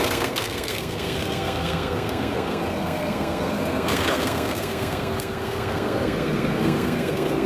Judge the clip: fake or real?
fake